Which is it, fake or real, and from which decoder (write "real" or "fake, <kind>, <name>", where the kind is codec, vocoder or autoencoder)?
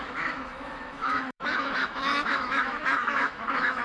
fake, autoencoder, DAC-VAE